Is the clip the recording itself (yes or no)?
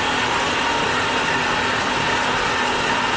yes